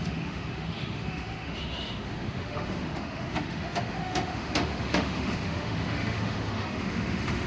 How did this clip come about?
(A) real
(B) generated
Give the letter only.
B